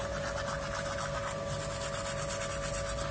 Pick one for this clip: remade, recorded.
recorded